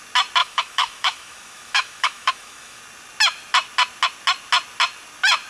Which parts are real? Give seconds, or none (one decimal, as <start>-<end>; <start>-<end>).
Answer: 0.0-0.4; 2.8-5.5